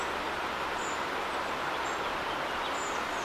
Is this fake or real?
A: real